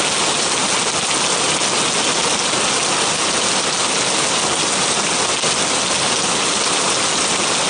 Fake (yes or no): no